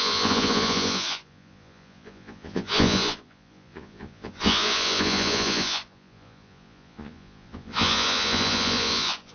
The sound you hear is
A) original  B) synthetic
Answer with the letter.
B